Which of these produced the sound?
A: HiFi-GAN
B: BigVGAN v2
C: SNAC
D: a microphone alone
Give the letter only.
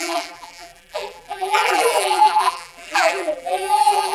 B